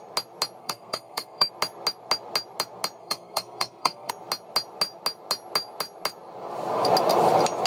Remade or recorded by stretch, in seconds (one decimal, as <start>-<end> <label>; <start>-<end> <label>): 0.0-0.6 recorded; 0.6-1.5 remade; 1.5-3.0 recorded; 3.0-4.1 remade; 4.1-7.7 recorded

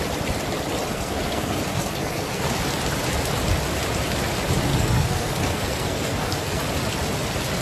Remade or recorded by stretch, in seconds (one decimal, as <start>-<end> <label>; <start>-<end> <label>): 0.0-0.9 recorded; 0.9-2.6 remade; 2.6-4.7 recorded; 4.7-6.6 remade; 6.6-7.6 recorded

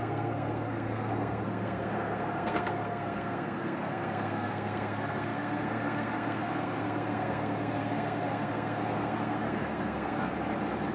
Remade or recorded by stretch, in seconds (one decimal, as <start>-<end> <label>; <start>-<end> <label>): 0.0-10.3 remade; 10.3-10.9 recorded

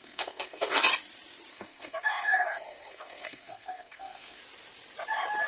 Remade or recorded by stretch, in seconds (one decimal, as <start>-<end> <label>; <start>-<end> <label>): 0.0-0.8 remade; 0.8-1.5 recorded; 1.5-4.4 remade; 4.4-5.5 recorded